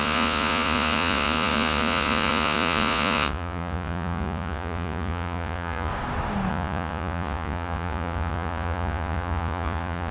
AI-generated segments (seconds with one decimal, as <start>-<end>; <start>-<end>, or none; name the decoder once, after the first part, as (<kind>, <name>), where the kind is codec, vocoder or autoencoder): 0.0-5.9 (vocoder, Vocos); 6.5-10.1